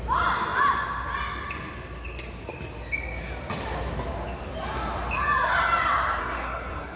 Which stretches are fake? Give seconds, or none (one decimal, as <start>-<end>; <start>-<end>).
6.2-7.0